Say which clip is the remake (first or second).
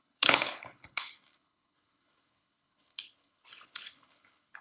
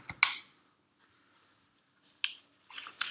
first